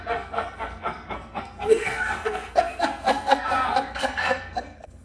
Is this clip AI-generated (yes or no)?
yes